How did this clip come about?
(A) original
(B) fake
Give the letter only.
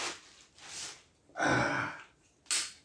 A